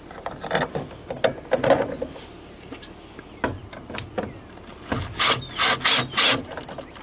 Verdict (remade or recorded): recorded